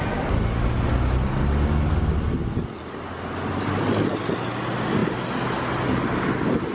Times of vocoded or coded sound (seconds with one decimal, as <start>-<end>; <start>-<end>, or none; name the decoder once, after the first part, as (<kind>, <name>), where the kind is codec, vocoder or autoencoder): none